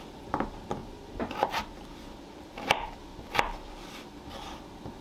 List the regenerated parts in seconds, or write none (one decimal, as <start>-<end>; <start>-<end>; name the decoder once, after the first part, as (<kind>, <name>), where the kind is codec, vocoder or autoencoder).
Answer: 0.0-5.0 (vocoder, BigVGAN v2)